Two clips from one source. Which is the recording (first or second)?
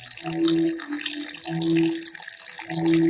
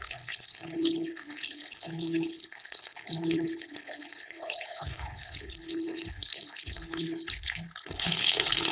first